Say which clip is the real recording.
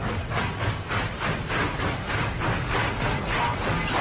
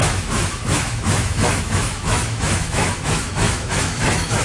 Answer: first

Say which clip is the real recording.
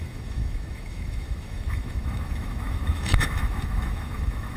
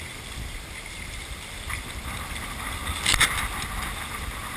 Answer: second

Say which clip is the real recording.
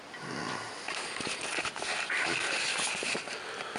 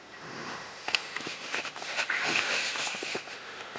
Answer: first